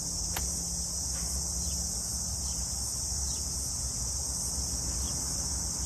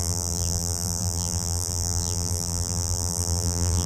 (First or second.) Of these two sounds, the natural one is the first